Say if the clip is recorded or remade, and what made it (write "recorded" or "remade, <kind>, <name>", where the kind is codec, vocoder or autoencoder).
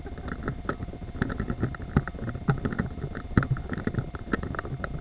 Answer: recorded